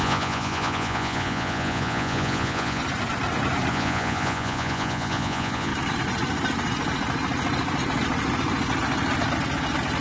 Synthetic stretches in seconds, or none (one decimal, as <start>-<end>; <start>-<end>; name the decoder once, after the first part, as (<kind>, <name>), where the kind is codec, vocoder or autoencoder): 0.0-2.8 (vocoder, Vocos); 3.7-5.7